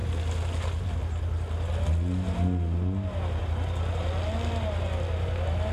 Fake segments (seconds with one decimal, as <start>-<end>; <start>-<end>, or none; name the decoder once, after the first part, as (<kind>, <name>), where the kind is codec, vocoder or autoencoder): none